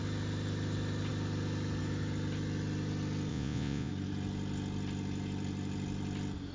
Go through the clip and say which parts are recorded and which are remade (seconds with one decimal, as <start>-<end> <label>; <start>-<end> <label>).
0.0-3.3 recorded; 3.3-3.9 remade; 3.9-6.5 recorded